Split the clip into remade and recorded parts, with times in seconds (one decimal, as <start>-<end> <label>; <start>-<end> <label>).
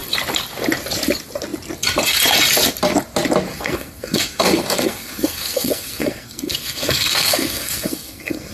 0.0-3.5 recorded; 3.5-8.5 remade